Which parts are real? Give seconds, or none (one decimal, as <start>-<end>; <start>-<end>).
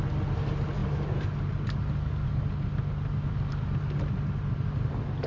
0.0-5.3